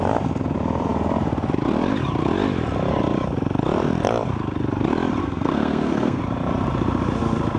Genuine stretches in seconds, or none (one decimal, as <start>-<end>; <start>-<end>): 0.0-5.2; 6.2-7.6